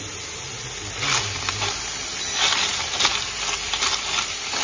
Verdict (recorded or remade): recorded